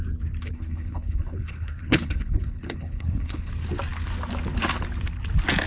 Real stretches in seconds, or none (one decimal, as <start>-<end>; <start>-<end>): 0.0-0.4; 3.5-5.7